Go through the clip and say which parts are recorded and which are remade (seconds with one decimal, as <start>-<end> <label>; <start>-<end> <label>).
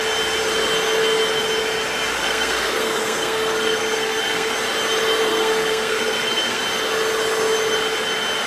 0.0-2.2 recorded; 2.2-4.5 remade; 4.5-5.3 recorded; 5.3-6.6 remade; 6.6-8.5 recorded